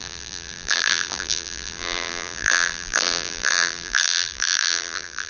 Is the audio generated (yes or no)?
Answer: yes